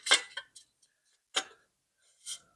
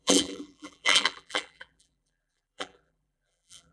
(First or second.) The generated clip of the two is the second